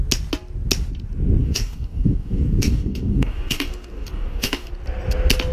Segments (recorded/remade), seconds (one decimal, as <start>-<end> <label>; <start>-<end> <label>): 0.0-1.4 recorded; 1.4-4.7 remade; 4.7-5.5 recorded